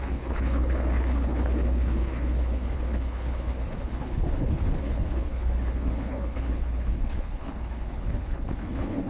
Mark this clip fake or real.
fake